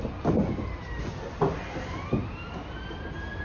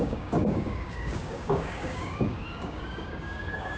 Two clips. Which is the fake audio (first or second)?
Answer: second